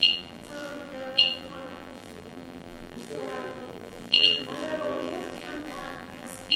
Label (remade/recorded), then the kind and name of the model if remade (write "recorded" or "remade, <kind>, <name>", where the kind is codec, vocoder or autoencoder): remade, vocoder, BigVGAN v2